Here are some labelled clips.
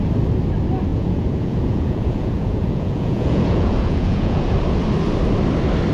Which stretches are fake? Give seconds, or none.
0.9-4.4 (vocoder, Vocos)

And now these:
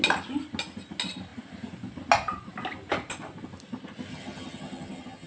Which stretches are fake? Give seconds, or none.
4.1-5.3 (vocoder, HiFi-GAN)

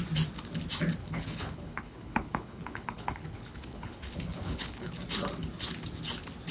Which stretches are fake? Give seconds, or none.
1.0-4.9 (codec, HILCodec)

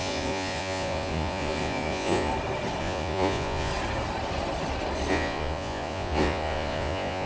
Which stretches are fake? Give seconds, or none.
0.0-2.3 (vocoder, Vocos); 2.8-3.7; 5.1-7.3

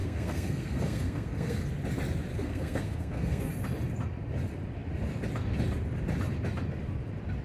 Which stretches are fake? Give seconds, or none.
0.0-1.6 (codec, SNAC); 2.3-3.5

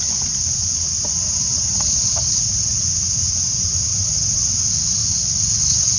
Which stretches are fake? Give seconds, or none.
1.5-2.8 (vocoder, WaveNeXt); 3.9-4.5

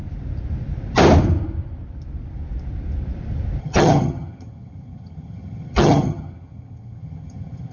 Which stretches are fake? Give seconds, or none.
3.6-7.7 (vocoder, HiFi-GAN)